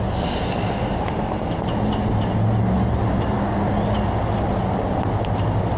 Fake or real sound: real